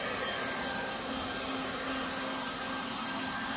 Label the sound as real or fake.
real